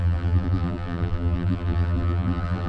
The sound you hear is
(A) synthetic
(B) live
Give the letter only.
A